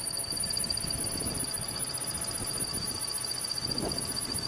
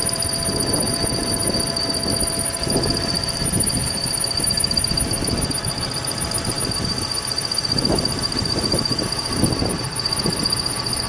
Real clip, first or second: first